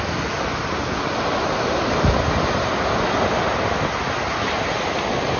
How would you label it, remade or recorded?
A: recorded